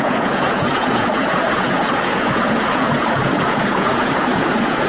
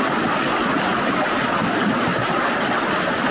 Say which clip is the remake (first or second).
first